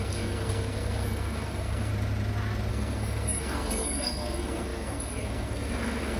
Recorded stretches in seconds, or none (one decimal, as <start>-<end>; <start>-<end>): 1.9-2.7